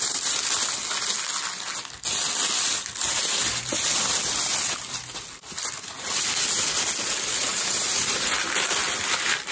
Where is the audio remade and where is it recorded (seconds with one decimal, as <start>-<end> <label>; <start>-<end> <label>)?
0.0-7.5 recorded; 7.5-8.1 remade; 8.1-9.5 recorded